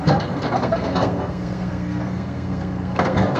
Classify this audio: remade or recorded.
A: remade